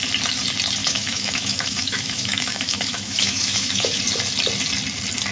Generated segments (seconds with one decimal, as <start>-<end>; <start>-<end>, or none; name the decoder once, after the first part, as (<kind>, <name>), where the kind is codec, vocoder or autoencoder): 0.8-4.0 (autoencoder, DAC-VAE)